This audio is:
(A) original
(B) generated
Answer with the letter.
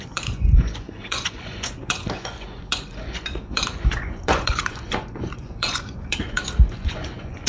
B